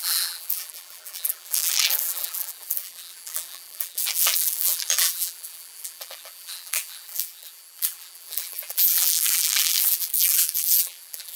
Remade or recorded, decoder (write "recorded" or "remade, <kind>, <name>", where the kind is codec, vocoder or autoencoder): remade, vocoder, BigVGAN v2